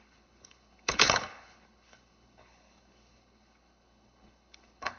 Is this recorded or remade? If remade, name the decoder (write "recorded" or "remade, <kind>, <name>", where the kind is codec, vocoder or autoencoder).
remade, codec, HILCodec